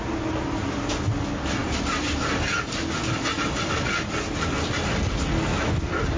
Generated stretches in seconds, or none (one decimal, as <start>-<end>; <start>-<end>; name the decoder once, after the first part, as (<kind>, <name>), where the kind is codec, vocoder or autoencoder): none